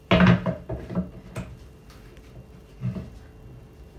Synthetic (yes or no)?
no